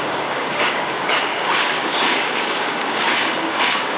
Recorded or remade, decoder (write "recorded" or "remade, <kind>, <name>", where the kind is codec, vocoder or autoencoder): remade, codec, DAC